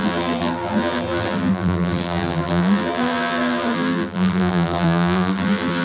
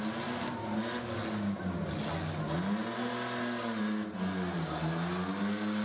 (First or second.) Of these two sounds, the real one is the second